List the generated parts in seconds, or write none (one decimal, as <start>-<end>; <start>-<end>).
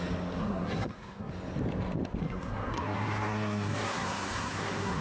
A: 0.4-1.3; 2.2-5.0